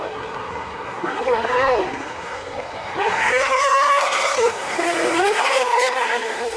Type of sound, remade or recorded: remade